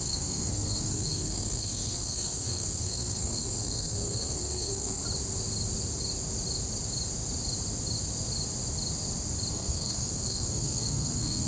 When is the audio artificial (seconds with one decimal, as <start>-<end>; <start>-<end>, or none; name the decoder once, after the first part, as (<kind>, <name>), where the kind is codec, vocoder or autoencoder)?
0.0-5.0 (codec, SNAC); 9.5-11.5